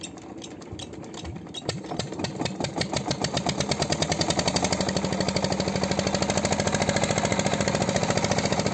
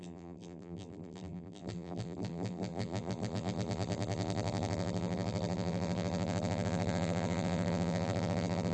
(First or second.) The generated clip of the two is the second